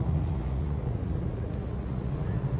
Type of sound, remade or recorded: remade